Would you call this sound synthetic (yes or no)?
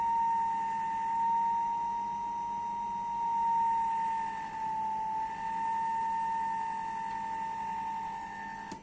no